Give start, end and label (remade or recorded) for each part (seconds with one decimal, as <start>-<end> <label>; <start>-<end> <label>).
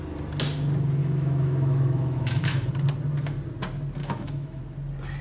0.0-1.0 recorded; 1.0-2.7 remade; 2.7-4.0 recorded; 4.0-4.6 remade; 4.6-5.2 recorded